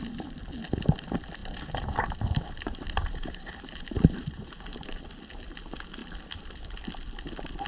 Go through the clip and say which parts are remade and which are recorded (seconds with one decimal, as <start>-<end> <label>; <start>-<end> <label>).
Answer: 0.0-1.4 recorded; 1.4-5.0 remade; 5.0-7.7 recorded